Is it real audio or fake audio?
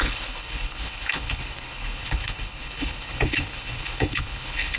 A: fake